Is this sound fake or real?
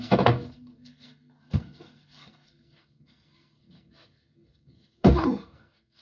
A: fake